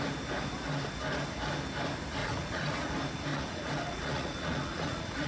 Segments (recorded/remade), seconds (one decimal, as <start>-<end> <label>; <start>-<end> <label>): 0.0-2.2 recorded; 2.2-2.9 remade; 2.9-3.3 recorded; 3.3-5.3 remade